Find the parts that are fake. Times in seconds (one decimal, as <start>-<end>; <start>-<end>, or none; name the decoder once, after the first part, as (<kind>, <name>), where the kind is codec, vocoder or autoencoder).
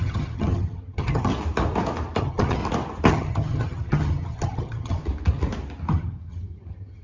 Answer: 0.0-1.3 (vocoder, HiFi-GAN); 2.2-2.6; 3.1-5.0; 5.9-7.0